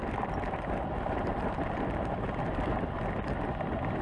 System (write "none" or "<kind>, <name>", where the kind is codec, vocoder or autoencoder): none